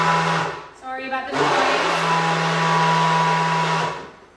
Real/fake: real